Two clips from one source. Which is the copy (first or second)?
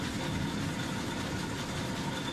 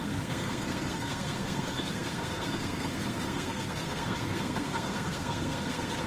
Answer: second